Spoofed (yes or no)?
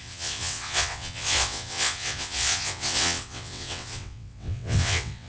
yes